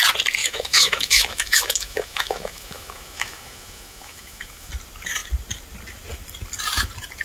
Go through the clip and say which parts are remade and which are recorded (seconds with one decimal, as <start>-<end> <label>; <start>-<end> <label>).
0.0-0.4 recorded; 0.4-4.7 remade; 4.7-7.2 recorded